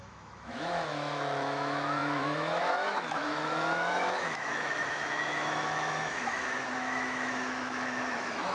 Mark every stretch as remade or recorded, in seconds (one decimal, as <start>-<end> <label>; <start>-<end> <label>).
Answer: 0.0-8.5 remade